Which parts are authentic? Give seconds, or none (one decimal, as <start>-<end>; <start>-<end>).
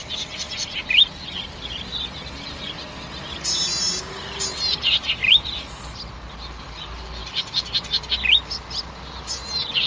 0.0-9.9